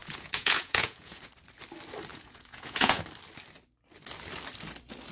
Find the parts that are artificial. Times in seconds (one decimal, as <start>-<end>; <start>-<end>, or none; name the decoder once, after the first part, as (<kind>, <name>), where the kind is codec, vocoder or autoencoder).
0.0-1.2 (vocoder, Vocos); 2.1-3.0